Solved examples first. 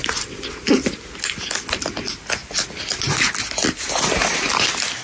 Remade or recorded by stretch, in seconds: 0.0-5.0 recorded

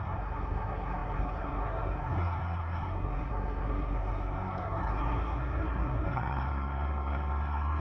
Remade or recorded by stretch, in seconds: 0.0-7.8 remade

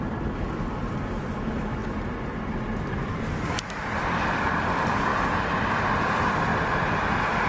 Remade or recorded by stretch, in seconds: 0.0-7.5 recorded

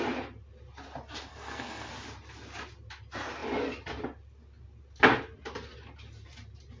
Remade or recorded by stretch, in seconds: 0.0-1.3 recorded; 1.3-1.9 remade; 1.9-6.8 recorded

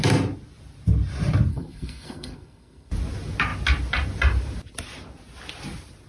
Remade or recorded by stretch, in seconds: 0.0-1.5 recorded; 1.5-2.9 remade; 2.9-6.1 recorded

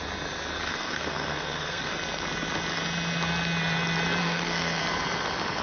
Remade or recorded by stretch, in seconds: 0.0-0.7 recorded; 0.7-1.9 remade; 1.9-4.2 recorded; 4.2-4.8 remade; 4.8-5.6 recorded